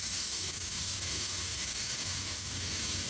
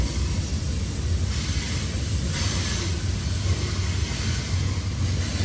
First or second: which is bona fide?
second